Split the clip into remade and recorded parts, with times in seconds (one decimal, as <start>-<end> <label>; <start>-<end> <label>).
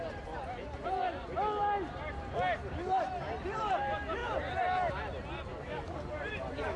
0.0-5.5 recorded; 5.5-6.2 remade; 6.2-6.8 recorded